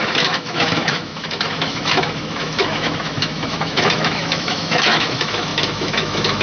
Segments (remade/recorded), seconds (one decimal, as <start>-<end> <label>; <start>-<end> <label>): 0.0-6.4 remade